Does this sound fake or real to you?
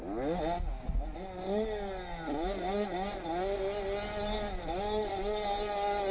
real